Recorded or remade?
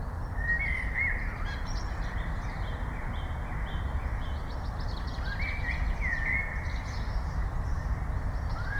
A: recorded